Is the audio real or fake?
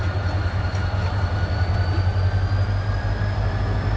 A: real